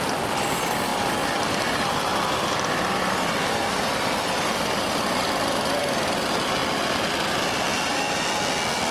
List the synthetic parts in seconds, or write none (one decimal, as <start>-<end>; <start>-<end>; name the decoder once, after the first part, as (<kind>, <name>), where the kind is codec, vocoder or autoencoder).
6.6-7.3 (vocoder, BigVGAN v2); 7.7-8.4